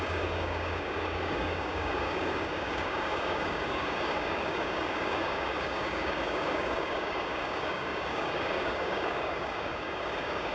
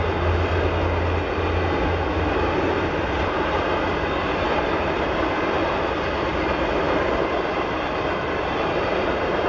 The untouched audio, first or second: second